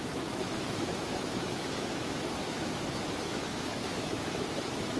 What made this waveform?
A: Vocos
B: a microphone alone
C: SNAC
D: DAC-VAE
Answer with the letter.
D